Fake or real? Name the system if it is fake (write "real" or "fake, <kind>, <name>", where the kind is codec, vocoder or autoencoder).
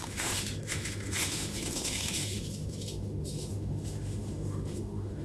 fake, autoencoder, DAC-VAE